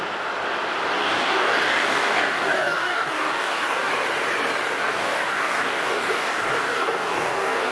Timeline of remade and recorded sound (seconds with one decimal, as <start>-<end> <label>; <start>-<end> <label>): 0.0-1.0 recorded; 1.0-3.9 remade; 3.9-4.8 recorded; 4.8-7.7 remade